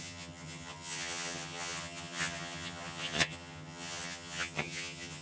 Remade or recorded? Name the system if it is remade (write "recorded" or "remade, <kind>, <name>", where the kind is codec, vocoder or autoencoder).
remade, vocoder, HiFi-GAN